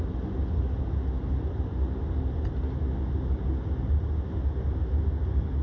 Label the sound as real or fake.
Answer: real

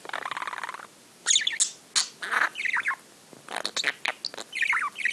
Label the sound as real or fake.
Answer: real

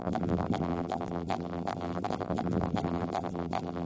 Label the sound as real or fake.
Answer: fake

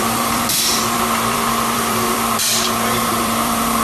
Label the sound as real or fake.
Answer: fake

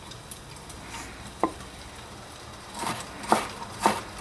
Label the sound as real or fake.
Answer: fake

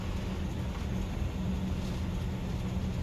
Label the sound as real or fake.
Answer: real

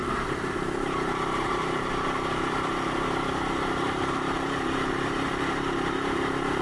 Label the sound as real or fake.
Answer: fake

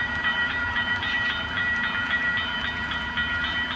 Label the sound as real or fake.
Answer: fake